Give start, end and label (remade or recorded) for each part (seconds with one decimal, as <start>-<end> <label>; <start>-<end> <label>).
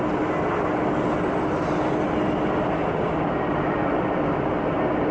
0.0-5.1 recorded